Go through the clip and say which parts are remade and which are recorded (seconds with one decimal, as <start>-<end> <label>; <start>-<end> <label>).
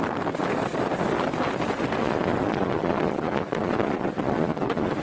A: 0.0-2.0 recorded; 2.0-5.0 remade